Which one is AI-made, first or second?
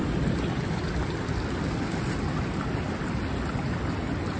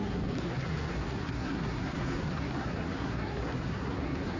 second